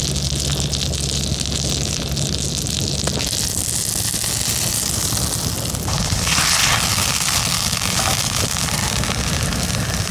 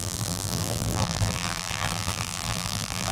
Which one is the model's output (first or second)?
second